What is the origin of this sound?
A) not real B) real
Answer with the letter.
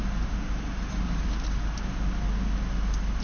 B